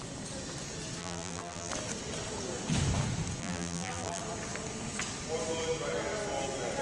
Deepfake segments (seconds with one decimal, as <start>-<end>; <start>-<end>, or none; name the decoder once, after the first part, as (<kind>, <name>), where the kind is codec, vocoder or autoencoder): 1.0-1.7 (vocoder, BigVGAN v2); 3.4-4.2